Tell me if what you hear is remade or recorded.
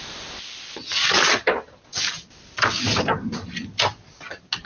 recorded